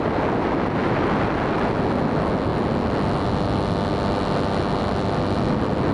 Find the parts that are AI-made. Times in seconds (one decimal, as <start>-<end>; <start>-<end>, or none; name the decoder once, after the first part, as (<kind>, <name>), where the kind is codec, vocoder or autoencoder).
none